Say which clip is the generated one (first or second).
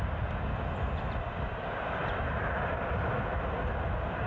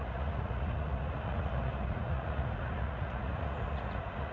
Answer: second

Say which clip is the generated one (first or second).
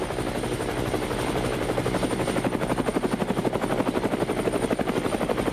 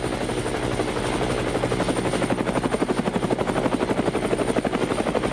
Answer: first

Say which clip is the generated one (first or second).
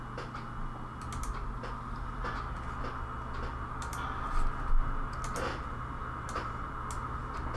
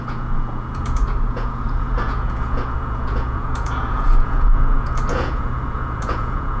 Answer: second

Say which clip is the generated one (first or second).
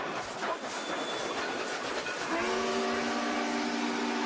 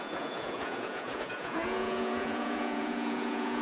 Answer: second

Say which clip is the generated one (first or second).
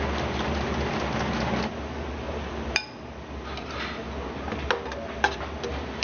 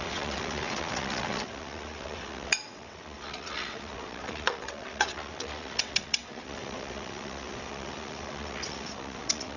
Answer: second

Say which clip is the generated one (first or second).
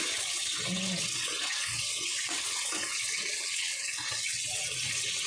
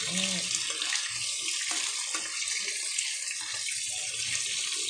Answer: first